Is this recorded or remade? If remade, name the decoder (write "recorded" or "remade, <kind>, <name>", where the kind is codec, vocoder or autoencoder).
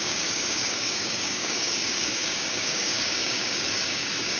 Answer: remade, codec, DAC